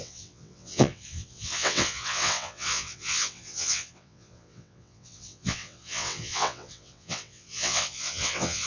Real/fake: fake